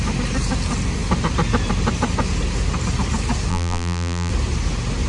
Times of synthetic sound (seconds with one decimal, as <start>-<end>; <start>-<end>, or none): 3.5-4.3